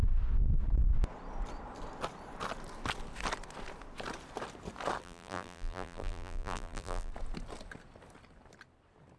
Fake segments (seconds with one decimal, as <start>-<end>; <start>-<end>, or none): 5.0-7.1